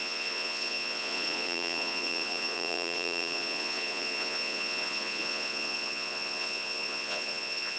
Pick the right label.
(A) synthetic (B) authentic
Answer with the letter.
A